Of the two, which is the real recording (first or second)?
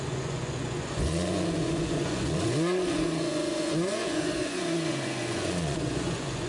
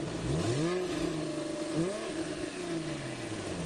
second